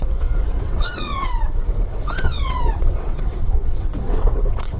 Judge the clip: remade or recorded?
remade